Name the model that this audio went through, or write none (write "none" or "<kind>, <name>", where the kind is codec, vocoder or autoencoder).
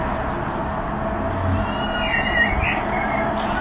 none